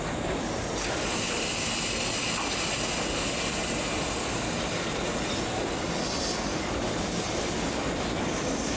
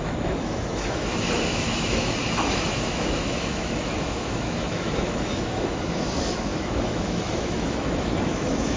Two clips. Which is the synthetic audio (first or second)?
second